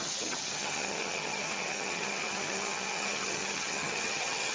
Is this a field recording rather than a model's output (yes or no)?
no